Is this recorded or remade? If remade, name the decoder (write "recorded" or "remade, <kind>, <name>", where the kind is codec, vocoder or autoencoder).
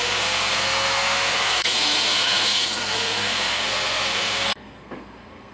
remade, codec, SNAC